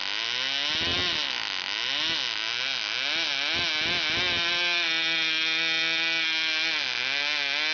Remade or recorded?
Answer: recorded